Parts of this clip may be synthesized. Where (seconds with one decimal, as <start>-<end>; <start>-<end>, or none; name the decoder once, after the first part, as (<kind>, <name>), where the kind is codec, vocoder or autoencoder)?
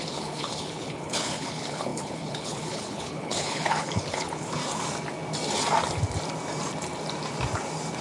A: 0.0-4.6 (codec, HILCodec)